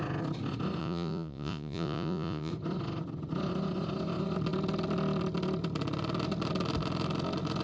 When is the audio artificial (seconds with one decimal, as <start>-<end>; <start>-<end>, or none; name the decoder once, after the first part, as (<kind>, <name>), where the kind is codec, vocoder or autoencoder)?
0.8-2.5 (vocoder, Vocos)

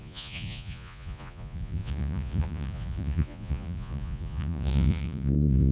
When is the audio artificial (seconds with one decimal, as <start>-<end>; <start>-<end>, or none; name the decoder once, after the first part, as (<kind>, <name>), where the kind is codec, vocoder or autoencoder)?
0.0-5.7 (vocoder, Vocos)

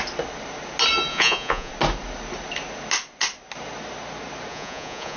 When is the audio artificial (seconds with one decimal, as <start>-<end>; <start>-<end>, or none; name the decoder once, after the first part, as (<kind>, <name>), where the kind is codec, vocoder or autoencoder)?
1.1-1.7 (vocoder, Vocos); 4.5-5.2

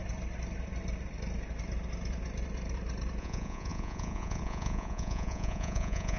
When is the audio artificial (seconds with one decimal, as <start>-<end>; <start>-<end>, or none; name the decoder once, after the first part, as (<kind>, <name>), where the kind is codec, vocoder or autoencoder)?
3.2-6.2 (vocoder, Vocos)

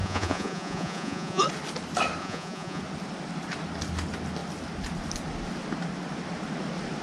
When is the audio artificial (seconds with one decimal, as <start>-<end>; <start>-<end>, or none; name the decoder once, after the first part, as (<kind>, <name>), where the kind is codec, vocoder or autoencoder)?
0.0-1.4 (vocoder, Vocos); 2.2-2.8

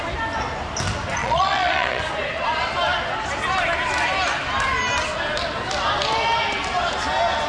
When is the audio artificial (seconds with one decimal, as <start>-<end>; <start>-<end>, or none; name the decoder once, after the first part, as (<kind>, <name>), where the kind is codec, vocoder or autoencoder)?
1.2-2.0 (vocoder, Vocos)

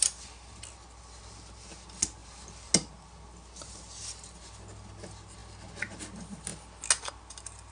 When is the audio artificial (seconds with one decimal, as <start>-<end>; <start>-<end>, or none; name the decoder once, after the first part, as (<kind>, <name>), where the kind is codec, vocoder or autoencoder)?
none

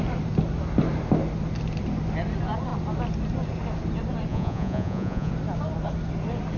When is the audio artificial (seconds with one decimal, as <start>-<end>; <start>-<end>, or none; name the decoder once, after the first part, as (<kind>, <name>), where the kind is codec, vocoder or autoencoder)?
4.3-5.3 (vocoder, Vocos)